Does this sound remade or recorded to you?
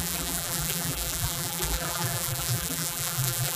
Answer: remade